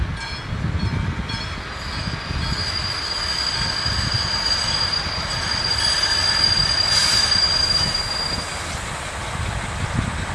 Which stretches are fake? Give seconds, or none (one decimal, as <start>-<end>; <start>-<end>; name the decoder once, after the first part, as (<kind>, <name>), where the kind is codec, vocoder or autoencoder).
none